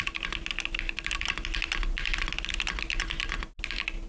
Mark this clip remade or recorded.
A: recorded